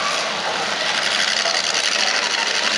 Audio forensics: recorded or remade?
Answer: recorded